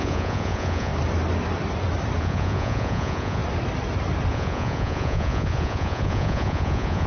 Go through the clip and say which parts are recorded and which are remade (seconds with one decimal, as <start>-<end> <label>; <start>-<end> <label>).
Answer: 0.0-0.9 remade; 0.9-2.2 recorded; 2.2-3.4 remade; 3.4-4.3 recorded; 4.3-7.1 remade